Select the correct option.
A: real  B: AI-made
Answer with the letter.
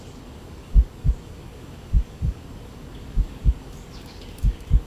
B